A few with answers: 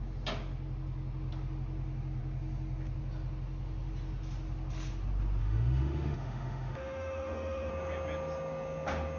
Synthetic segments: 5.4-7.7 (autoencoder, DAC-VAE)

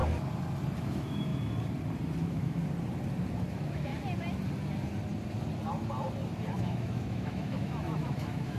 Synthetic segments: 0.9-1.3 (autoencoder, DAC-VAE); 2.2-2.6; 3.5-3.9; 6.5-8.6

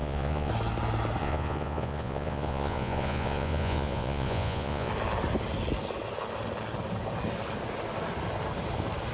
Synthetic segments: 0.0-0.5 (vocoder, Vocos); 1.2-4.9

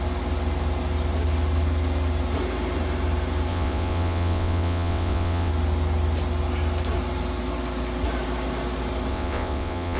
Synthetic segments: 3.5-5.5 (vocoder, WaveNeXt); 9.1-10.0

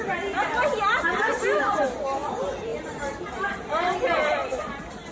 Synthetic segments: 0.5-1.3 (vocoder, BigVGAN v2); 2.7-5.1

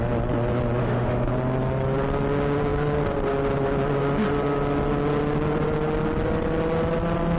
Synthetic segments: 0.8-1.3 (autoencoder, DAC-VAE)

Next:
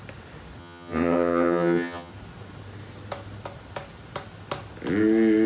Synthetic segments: 0.6-2.1 (vocoder, HiFi-GAN)